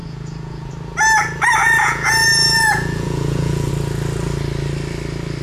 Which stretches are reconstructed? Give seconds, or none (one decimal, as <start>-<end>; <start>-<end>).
0.0-0.7; 1.6-3.7